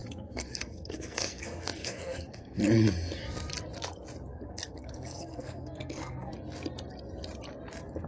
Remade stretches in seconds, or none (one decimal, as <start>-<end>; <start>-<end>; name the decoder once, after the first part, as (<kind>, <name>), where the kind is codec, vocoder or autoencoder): 0.0-2.6 (codec, SNAC); 4.3-6.3